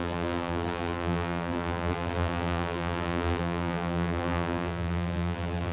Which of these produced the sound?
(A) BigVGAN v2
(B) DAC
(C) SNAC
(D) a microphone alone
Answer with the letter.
A